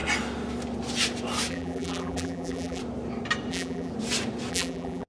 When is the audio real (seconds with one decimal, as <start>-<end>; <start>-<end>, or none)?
0.0-1.5; 2.8-3.5; 3.9-4.5